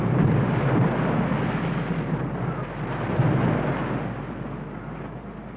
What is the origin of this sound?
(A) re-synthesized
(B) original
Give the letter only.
B